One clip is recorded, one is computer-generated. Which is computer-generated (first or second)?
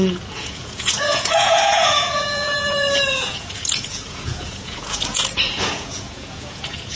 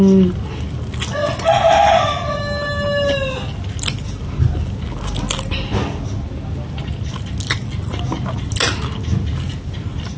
first